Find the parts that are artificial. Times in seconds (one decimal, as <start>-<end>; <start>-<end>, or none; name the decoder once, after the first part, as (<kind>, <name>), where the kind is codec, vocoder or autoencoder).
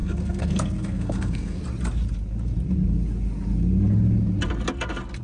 0.0-1.6 (codec, SNAC)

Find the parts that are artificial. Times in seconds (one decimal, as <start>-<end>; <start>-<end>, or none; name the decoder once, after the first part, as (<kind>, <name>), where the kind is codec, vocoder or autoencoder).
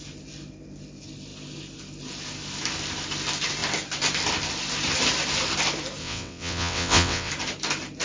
6.0-7.3 (vocoder, WaveNeXt)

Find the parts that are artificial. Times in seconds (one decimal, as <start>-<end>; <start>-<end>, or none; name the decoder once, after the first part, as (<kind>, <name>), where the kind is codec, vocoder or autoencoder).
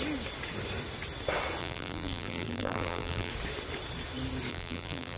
1.6-3.3 (vocoder, BigVGAN v2); 4.5-5.2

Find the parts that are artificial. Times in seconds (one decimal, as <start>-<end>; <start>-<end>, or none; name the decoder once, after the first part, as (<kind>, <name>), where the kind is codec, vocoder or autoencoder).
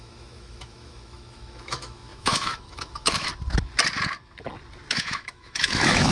0.0-3.3 (autoencoder, DAC-VAE); 4.9-6.1